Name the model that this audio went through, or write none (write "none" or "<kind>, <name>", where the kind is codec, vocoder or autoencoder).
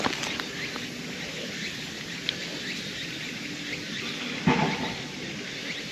none